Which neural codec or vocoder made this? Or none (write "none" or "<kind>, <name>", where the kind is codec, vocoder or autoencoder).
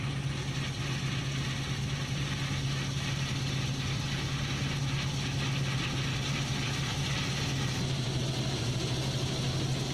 none